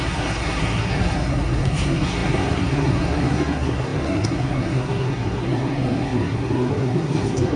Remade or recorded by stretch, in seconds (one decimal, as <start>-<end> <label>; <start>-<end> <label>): 0.0-7.6 remade